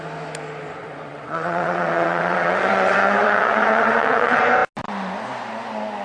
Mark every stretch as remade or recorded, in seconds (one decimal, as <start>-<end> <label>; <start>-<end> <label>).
0.0-0.8 recorded; 0.8-4.4 remade; 4.4-6.0 recorded